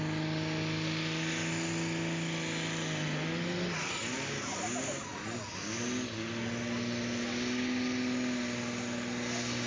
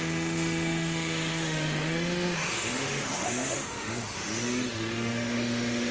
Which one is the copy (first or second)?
second